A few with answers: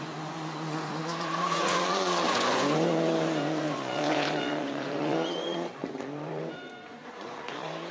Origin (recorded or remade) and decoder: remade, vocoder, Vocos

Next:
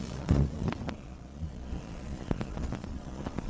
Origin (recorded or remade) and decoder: remade, vocoder, Vocos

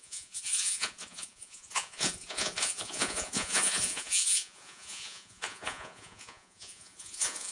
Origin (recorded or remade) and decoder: remade, vocoder, Vocos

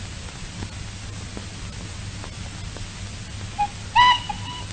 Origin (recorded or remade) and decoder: recorded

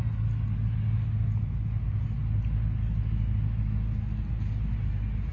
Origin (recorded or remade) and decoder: recorded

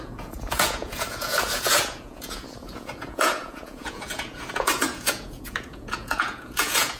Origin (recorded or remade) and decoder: remade, vocoder, Vocos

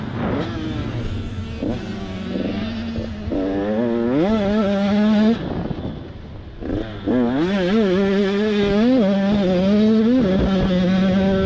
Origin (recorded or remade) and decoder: recorded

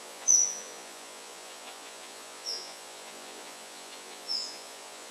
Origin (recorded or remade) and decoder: remade, vocoder, Vocos